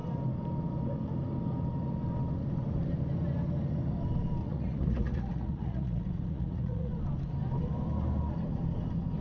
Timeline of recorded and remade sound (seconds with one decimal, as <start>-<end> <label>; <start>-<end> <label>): 0.0-4.4 recorded; 4.4-6.9 remade; 6.9-9.2 recorded